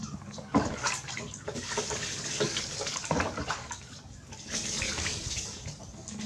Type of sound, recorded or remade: remade